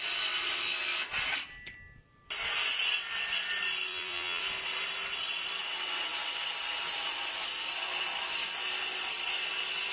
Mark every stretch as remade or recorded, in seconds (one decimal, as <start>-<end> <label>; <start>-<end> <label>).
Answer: 0.0-3.9 recorded; 3.9-4.4 remade; 4.4-9.9 recorded